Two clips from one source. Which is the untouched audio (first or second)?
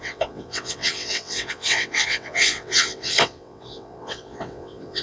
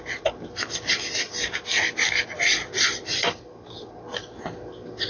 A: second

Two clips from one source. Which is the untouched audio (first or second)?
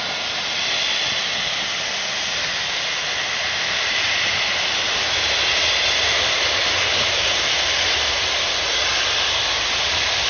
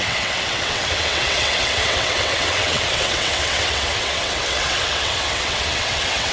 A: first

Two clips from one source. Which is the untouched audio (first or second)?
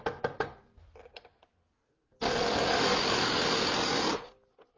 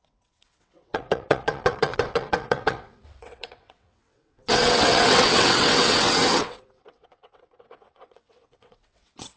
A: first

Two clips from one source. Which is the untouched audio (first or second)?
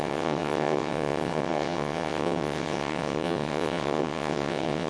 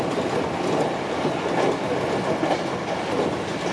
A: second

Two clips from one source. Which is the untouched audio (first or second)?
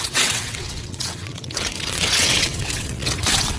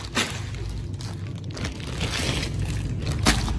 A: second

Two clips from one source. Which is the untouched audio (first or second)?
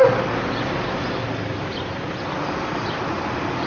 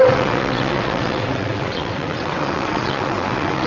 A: first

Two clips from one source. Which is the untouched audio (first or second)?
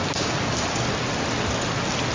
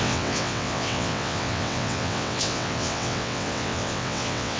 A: first